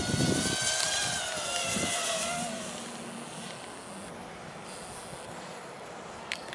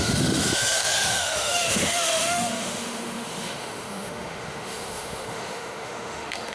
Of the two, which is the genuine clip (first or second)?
first